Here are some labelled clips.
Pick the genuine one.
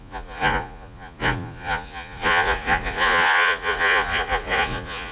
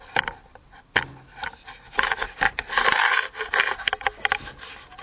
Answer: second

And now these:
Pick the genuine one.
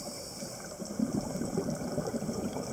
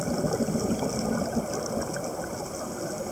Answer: second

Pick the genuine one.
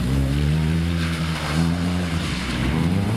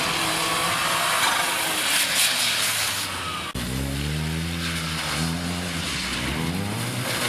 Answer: second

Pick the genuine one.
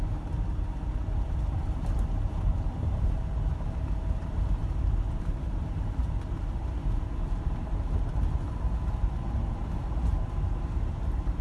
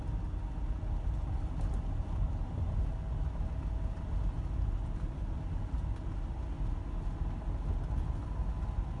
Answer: second